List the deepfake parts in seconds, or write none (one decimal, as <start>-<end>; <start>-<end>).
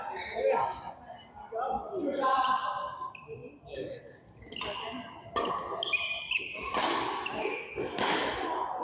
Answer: none